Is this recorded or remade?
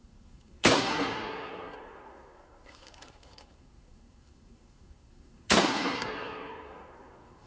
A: remade